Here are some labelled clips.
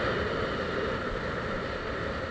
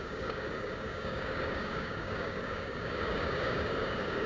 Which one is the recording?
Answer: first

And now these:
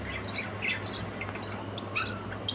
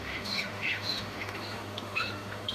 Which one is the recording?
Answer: first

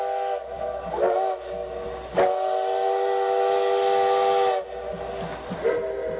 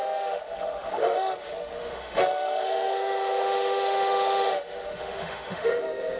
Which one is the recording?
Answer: first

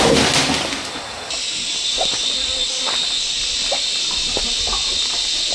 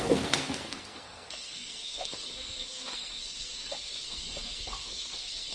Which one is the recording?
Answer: first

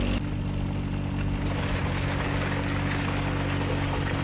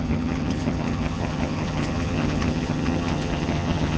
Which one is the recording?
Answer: first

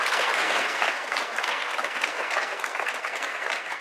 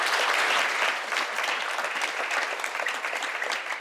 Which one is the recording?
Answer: second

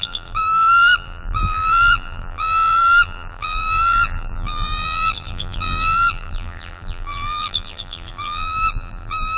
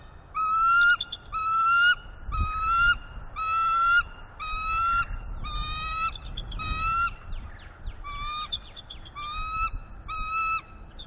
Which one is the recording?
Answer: second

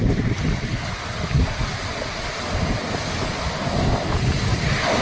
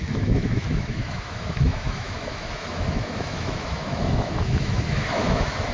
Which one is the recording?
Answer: first